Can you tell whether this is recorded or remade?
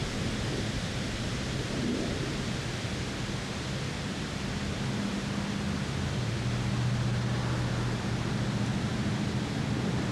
recorded